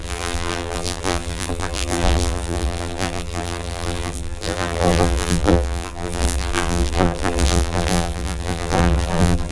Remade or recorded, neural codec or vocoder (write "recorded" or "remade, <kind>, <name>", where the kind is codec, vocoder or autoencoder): remade, vocoder, BigVGAN v2